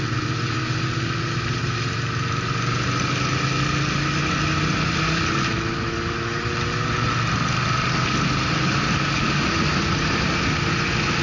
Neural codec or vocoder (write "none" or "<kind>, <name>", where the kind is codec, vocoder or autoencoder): none